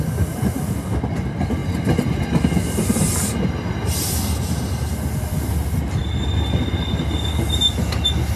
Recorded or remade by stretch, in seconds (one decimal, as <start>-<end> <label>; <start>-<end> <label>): 0.0-8.4 recorded